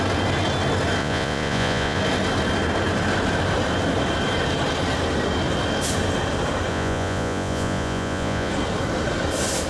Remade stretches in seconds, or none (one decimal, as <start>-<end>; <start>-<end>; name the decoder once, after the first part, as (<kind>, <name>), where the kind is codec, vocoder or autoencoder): 1.0-2.0 (vocoder, Vocos); 6.7-8.5